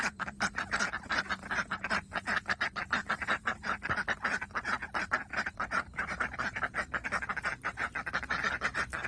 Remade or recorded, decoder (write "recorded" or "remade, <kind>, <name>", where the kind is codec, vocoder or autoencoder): remade, vocoder, BigVGAN v2